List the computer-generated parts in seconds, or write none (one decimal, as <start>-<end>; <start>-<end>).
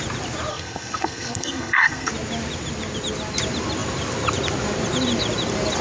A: 0.5-2.1